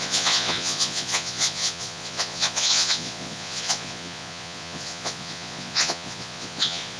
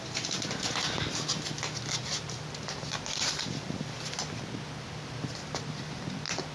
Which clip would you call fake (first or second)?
first